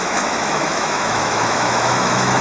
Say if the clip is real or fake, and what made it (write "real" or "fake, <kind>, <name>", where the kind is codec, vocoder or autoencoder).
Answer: fake, autoencoder, DAC-VAE